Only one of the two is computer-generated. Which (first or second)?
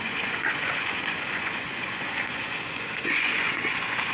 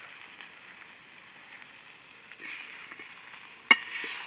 first